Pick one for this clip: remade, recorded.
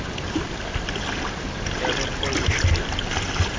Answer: recorded